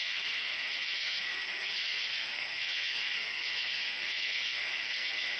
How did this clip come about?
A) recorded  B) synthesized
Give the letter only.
B